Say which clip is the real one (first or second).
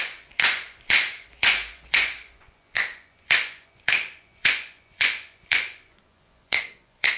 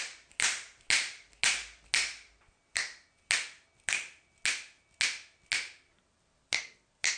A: second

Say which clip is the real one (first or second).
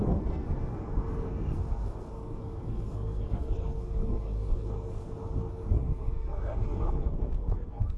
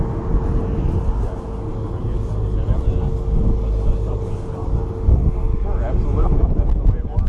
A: second